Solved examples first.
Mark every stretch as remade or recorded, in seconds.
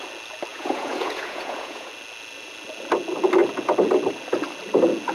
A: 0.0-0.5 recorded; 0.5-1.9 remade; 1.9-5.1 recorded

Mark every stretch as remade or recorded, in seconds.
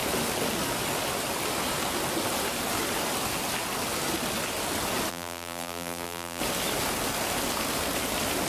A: 0.0-5.1 recorded; 5.1-6.4 remade; 6.4-8.5 recorded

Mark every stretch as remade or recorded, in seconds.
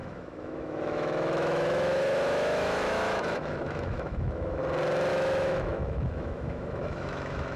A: 0.0-4.6 remade; 4.6-5.1 recorded; 5.1-7.6 remade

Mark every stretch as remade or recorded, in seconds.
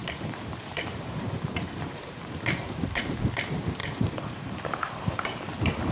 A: 0.0-3.0 remade; 3.0-3.8 recorded; 3.8-5.4 remade; 5.4-5.9 recorded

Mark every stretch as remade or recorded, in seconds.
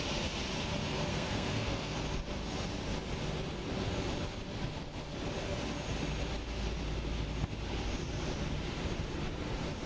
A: 0.0-1.1 recorded; 1.1-2.0 remade; 2.0-9.9 recorded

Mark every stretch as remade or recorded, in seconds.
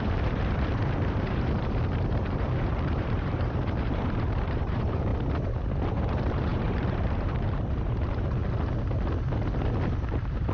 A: 0.0-5.1 remade; 5.1-5.9 recorded; 5.9-8.4 remade; 8.4-10.0 recorded; 10.0-10.5 remade